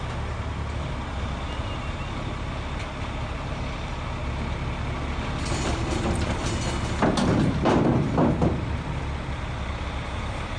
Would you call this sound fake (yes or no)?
no